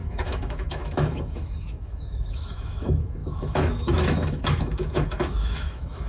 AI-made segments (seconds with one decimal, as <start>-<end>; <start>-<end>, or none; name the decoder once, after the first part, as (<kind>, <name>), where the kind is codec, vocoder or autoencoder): 0.0-6.1 (autoencoder, DAC-VAE)